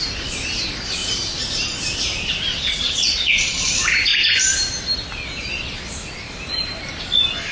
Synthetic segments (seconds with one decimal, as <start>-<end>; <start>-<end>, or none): 2.5-3.6